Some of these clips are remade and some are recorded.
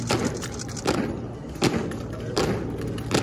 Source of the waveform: recorded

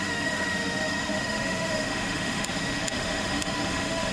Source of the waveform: remade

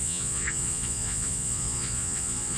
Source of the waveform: remade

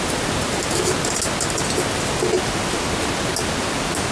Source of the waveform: recorded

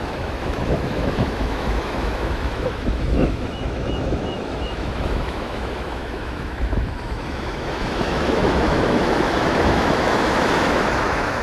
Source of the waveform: remade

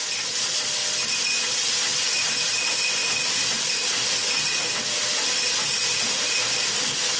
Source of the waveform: recorded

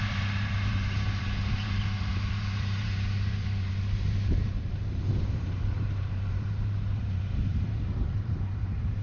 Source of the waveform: remade